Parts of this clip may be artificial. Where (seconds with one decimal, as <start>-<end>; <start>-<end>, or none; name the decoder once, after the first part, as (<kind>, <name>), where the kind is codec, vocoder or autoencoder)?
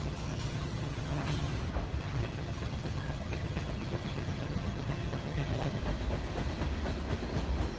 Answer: 0.0-1.5 (vocoder, HiFi-GAN); 2.0-5.8